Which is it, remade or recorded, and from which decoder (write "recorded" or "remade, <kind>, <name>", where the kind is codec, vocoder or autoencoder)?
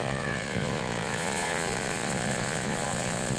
remade, vocoder, Vocos